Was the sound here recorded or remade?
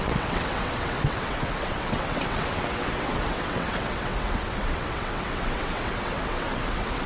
remade